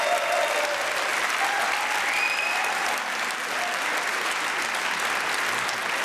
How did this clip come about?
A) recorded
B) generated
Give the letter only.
A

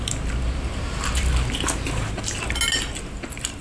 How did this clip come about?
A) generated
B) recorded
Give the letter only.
B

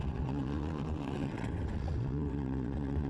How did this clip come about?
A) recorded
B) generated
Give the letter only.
B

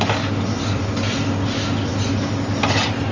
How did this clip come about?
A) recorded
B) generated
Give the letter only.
A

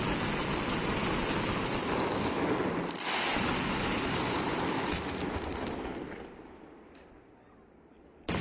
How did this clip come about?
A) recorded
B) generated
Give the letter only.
A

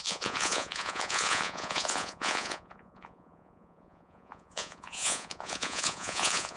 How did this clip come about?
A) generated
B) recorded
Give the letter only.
A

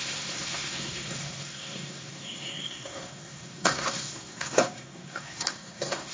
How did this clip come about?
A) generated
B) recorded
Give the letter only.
A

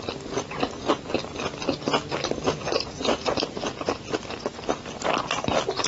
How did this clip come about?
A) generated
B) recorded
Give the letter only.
B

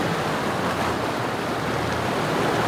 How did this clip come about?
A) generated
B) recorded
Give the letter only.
B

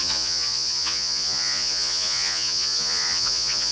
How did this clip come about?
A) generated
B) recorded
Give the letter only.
A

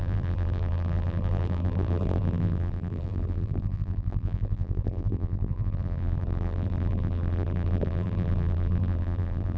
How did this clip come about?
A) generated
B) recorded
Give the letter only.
A